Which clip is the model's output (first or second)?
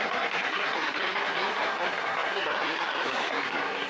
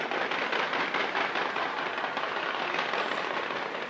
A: first